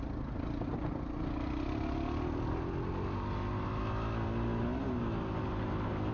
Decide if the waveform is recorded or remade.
recorded